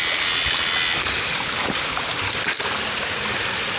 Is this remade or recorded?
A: recorded